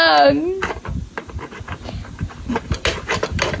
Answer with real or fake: real